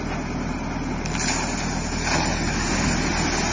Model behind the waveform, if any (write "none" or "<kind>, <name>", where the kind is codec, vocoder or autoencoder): none